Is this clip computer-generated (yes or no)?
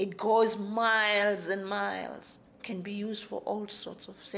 no